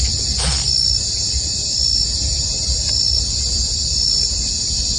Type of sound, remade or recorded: recorded